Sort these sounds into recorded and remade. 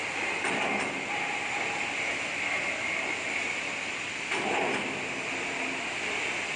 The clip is recorded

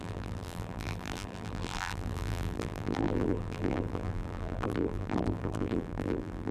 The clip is remade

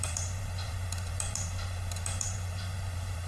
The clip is remade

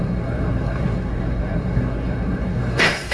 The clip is remade